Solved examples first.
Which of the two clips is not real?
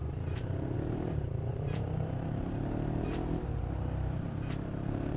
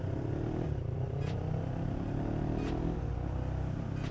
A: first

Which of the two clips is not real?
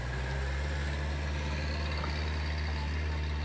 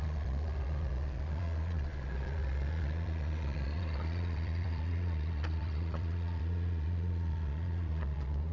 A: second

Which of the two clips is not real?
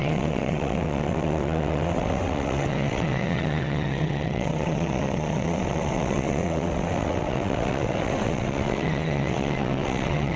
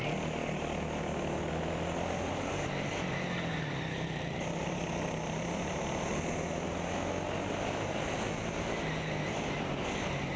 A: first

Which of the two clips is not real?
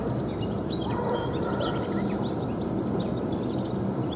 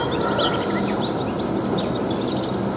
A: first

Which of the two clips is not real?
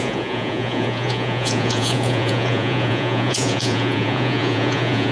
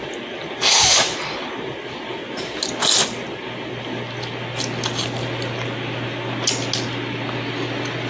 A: first